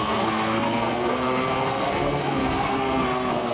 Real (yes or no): no